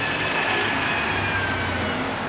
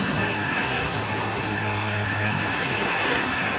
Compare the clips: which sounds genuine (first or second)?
first